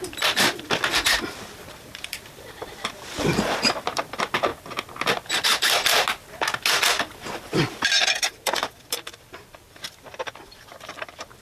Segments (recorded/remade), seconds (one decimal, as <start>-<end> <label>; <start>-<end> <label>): 0.0-4.5 remade; 4.5-7.0 recorded; 7.0-11.4 remade